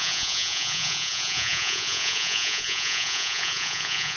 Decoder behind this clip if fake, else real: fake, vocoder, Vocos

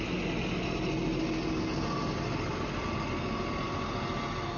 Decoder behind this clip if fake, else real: real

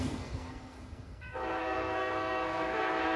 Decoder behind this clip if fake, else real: fake, codec, SNAC